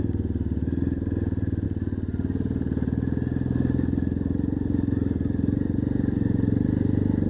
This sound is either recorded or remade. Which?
recorded